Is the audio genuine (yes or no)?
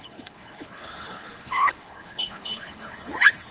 no